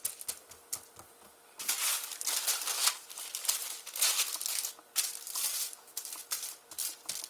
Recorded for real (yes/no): yes